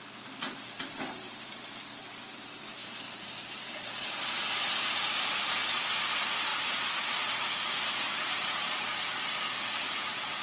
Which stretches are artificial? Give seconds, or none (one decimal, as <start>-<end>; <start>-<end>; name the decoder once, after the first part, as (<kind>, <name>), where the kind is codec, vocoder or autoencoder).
0.0-6.5 (vocoder, BigVGAN v2); 7.2-10.4